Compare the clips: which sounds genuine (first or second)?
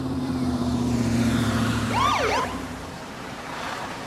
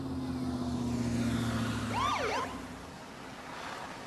second